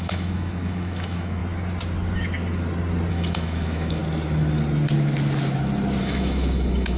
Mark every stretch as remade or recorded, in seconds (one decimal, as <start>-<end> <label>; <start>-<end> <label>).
0.0-1.4 remade; 1.4-3.1 recorded; 3.1-4.0 remade; 4.0-6.0 recorded; 6.0-7.0 remade